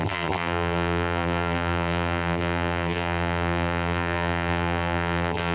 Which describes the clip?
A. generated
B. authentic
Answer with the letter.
A